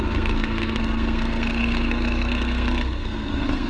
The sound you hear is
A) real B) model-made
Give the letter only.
B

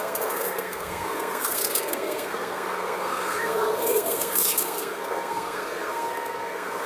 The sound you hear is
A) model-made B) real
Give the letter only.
A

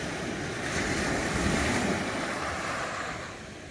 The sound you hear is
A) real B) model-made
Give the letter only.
A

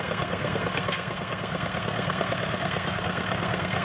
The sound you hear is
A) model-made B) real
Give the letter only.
A